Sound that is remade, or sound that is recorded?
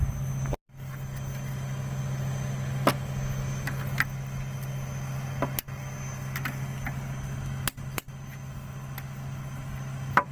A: recorded